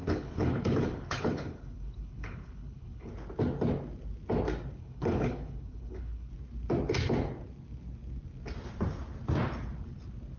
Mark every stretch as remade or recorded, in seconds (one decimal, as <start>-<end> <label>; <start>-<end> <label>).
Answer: 0.0-3.1 remade; 3.1-4.8 recorded; 4.8-6.3 remade; 6.3-10.4 recorded